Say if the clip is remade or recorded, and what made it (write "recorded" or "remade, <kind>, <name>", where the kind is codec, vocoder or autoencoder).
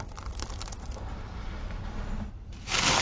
recorded